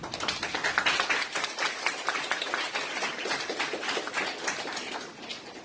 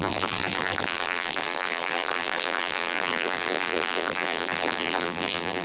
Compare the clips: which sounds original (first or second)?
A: first